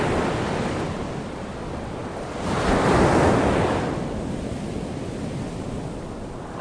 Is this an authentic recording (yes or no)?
yes